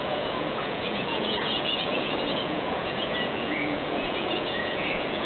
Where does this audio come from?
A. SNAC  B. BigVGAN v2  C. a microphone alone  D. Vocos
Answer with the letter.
D